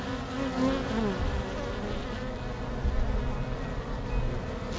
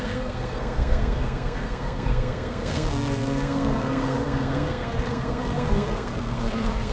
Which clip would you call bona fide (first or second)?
first